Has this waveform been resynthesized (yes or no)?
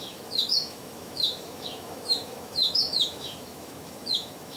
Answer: yes